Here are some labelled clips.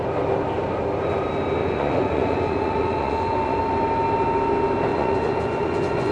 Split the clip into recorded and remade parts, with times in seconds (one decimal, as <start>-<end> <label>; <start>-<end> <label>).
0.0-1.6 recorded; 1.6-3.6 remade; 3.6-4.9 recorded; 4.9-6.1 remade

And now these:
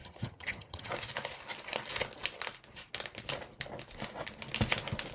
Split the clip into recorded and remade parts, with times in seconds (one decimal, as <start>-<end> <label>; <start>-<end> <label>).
0.0-0.9 remade; 0.9-5.1 recorded

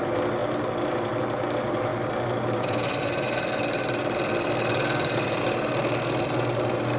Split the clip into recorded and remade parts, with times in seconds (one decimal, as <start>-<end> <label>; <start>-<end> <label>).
0.0-0.4 recorded; 0.4-1.2 remade; 1.2-1.9 recorded; 1.9-3.0 remade; 3.0-4.0 recorded; 4.0-5.4 remade; 5.4-7.0 recorded

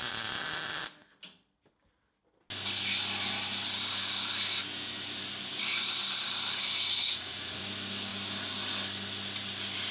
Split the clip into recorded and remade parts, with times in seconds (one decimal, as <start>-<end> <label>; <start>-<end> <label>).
0.0-7.0 recorded; 7.0-7.6 remade; 7.6-9.9 recorded

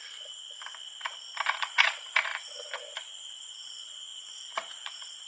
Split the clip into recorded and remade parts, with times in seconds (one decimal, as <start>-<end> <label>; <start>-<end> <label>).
0.0-4.1 recorded; 4.1-5.3 remade